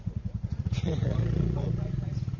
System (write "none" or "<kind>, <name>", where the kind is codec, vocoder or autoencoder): vocoder, Vocos